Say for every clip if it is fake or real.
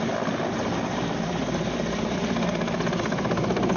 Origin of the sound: fake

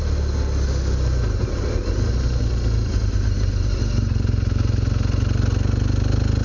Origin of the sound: real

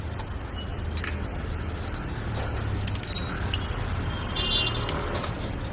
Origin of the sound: real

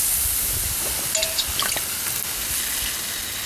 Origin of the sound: real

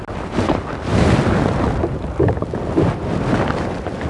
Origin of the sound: real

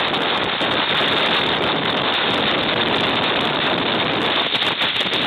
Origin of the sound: real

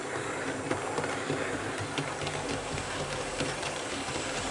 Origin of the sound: fake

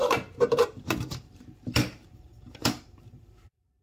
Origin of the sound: fake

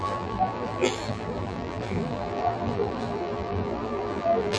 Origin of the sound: fake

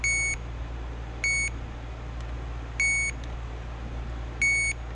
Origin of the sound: real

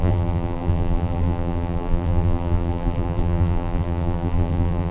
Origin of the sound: fake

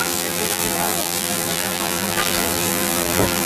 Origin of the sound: fake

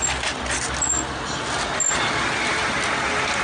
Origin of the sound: real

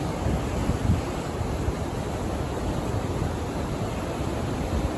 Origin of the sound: real